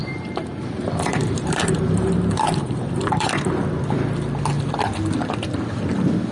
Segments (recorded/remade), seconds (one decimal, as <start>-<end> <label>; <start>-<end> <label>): 0.0-3.5 remade; 3.5-6.3 recorded